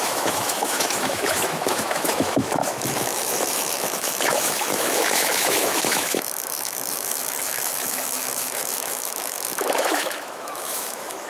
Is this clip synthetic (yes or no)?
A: yes